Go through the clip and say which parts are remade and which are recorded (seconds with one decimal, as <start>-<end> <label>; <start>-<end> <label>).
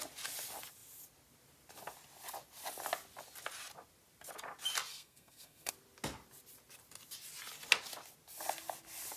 0.0-4.9 recorded; 4.9-5.7 remade; 5.7-9.2 recorded